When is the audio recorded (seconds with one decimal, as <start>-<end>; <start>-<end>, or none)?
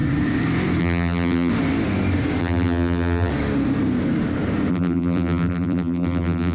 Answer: 0.0-0.8; 1.5-2.4; 3.3-4.7